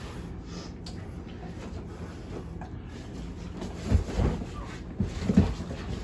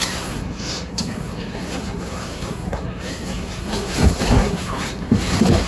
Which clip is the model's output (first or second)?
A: second